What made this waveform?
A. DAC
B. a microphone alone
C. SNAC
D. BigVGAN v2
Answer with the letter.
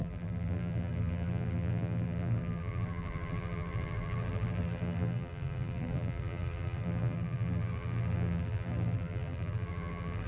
D